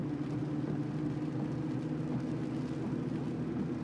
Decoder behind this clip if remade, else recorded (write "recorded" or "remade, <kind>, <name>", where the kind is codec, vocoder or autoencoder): recorded